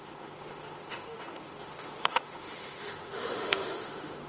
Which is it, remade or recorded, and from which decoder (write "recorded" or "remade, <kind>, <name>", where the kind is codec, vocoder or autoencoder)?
remade, autoencoder, DAC-VAE